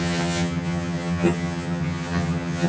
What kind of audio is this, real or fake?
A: fake